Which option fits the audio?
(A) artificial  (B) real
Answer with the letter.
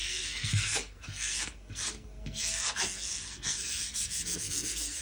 A